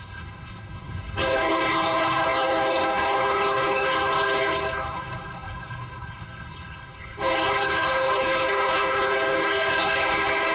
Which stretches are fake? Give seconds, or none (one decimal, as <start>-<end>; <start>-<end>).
0.0-10.5